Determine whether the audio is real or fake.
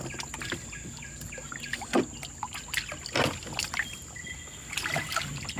real